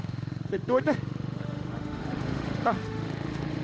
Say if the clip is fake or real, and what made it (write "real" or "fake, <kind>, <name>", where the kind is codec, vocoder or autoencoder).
fake, autoencoder, DAC-VAE